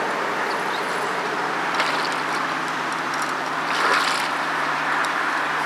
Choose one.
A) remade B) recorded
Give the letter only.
A